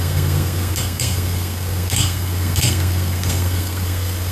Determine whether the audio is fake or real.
fake